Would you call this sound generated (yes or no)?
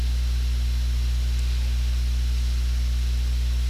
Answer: no